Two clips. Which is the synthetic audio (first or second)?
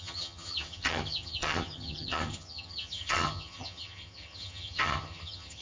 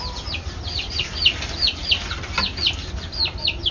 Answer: first